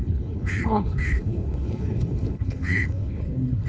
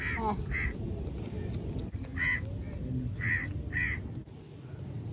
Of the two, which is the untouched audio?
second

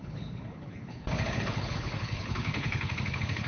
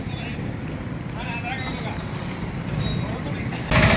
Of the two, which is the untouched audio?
second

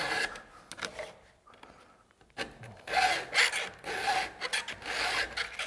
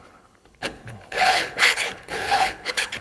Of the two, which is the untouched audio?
first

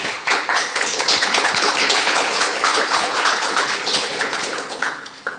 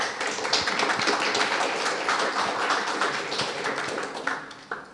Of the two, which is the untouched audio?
second